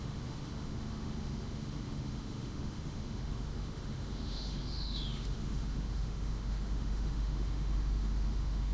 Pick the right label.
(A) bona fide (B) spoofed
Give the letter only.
B